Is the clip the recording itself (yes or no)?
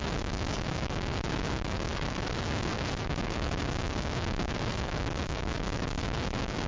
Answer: no